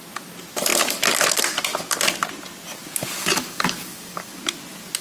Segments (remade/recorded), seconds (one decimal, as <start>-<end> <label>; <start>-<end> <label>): 0.0-3.2 recorded; 3.2-4.4 remade; 4.4-5.0 recorded